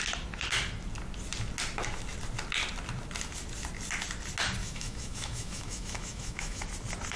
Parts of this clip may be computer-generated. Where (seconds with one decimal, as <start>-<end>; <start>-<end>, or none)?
4.6-6.6